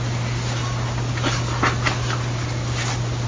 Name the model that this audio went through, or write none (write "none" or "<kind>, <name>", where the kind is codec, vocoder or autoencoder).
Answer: none